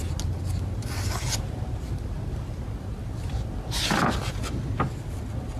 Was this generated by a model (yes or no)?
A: no